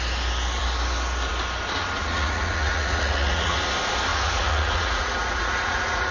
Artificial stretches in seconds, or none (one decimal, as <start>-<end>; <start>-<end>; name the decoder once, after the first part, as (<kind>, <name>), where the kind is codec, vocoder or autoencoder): 2.0-3.6 (vocoder, Vocos); 4.1-6.1